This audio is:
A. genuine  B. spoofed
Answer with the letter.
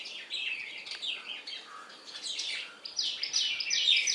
A